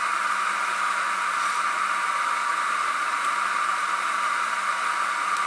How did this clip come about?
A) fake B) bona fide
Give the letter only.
B